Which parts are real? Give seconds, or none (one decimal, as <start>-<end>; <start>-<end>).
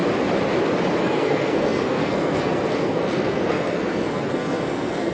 0.0-1.0